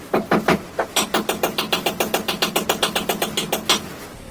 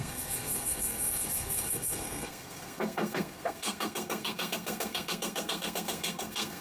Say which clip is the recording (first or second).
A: first